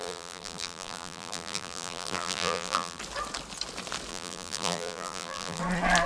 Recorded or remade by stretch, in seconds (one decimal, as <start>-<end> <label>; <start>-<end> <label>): 0.0-3.0 remade; 3.0-4.1 recorded; 4.1-5.6 remade; 5.6-6.1 recorded